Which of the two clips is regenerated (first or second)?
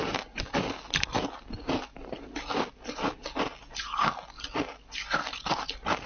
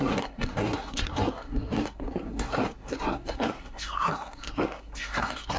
second